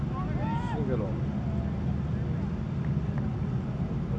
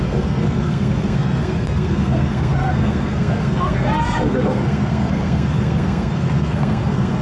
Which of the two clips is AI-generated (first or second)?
second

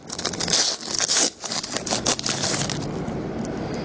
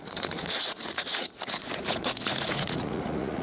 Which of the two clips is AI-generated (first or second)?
second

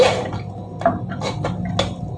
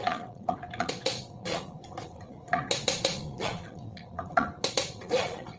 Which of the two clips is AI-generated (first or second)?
second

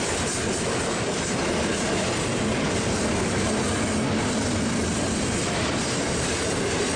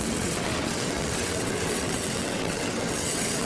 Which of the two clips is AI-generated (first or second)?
second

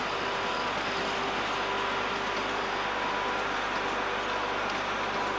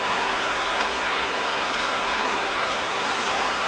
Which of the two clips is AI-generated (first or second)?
second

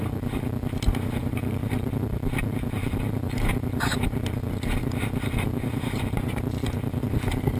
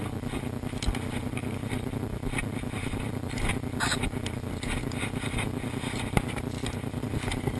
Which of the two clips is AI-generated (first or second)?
first